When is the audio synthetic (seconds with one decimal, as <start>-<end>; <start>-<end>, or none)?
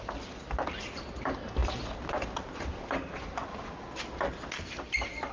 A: none